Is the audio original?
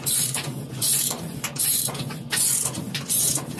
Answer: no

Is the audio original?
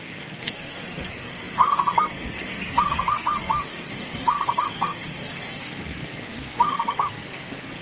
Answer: no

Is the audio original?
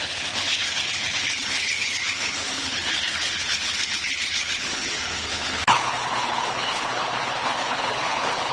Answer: no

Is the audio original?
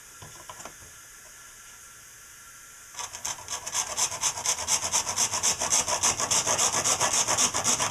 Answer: yes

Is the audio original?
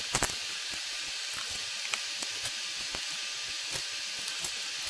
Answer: yes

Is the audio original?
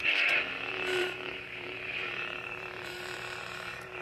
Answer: no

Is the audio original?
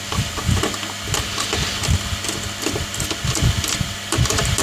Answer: yes